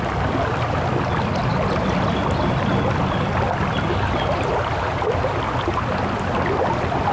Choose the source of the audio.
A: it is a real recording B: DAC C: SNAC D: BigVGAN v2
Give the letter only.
A